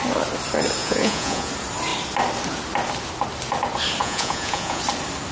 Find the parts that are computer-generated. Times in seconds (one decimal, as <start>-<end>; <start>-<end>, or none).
0.8-1.5; 4.0-4.8